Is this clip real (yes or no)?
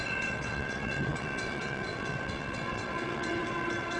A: no